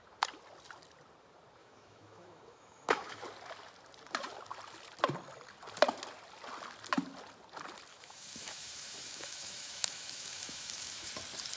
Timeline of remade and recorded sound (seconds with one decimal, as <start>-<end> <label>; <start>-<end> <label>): 0.0-1.6 recorded; 1.6-3.2 remade; 3.2-7.9 recorded; 7.9-11.1 remade; 11.1-11.6 recorded